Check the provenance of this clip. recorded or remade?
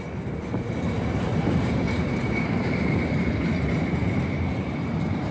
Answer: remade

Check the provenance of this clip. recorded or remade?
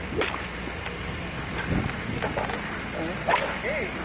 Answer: recorded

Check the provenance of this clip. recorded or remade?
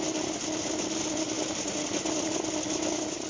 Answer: recorded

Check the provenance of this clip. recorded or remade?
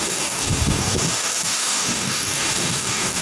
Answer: remade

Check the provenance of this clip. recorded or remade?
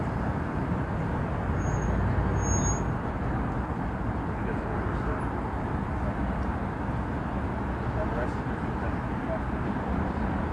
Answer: recorded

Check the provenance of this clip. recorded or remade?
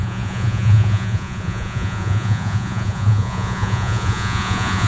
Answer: remade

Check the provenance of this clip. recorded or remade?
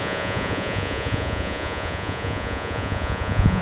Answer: remade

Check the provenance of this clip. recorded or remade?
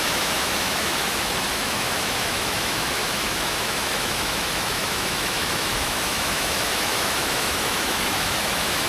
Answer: remade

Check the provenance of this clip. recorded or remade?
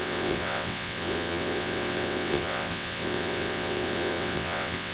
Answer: remade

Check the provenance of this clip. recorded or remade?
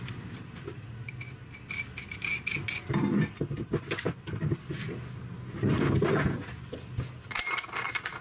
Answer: recorded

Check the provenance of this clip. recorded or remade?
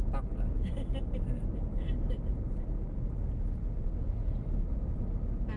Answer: recorded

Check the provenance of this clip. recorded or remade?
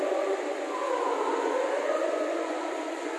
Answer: remade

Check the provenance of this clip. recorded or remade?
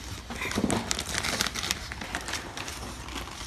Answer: recorded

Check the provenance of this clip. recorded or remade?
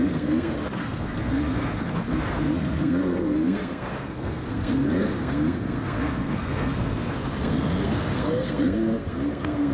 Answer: remade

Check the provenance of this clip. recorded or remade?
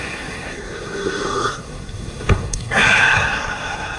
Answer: remade